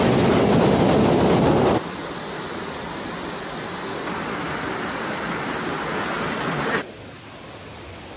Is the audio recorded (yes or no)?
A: yes